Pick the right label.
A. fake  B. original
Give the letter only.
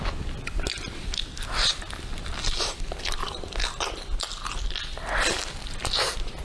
B